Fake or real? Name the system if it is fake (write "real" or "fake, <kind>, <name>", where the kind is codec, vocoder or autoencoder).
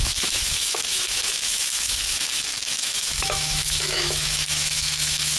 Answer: fake, autoencoder, DAC-VAE